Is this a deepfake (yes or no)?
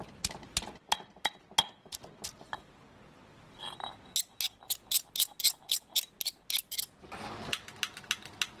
no